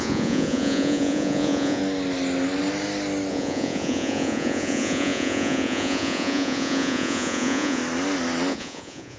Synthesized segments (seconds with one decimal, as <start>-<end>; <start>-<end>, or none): 0.0-1.8; 3.3-7.8; 8.5-9.2